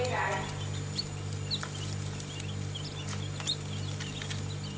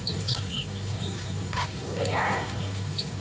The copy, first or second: second